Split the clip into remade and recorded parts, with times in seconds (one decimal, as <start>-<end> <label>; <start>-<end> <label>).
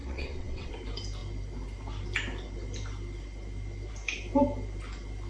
0.0-0.7 remade; 0.7-5.3 recorded